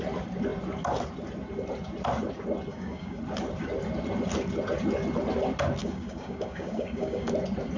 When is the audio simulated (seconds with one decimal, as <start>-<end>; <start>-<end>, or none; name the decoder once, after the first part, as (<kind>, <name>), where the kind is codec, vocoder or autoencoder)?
2.7-3.2 (codec, DAC); 5.8-7.3

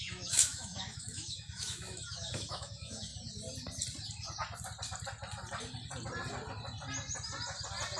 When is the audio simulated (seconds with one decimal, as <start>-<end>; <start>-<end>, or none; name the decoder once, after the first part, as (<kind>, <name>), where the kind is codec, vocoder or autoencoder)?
0.0-3.1 (autoencoder, DAC-VAE)

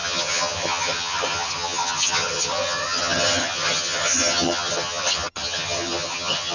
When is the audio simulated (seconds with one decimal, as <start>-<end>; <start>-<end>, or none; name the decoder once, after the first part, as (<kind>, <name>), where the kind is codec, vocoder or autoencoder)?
0.0-6.5 (vocoder, HiFi-GAN)

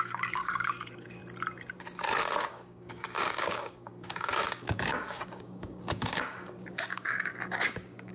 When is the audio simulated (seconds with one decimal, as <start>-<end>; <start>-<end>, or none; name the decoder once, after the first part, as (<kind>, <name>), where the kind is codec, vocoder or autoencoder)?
0.0-1.2 (codec, DAC); 2.5-8.1

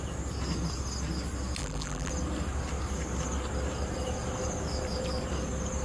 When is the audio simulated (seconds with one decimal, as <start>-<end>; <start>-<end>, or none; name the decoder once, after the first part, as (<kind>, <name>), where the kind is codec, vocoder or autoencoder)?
1.6-2.1 (vocoder, BigVGAN v2)

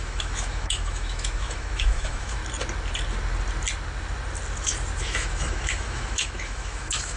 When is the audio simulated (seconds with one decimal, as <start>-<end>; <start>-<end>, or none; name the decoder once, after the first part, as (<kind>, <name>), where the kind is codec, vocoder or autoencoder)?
0.0-2.4 (autoencoder, DAC-VAE); 5.0-7.2

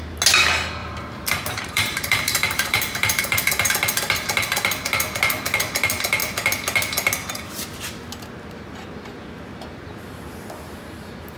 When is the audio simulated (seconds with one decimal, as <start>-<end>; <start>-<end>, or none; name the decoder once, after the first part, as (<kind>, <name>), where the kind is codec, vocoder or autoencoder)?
0.8-3.7 (vocoder, BigVGAN v2)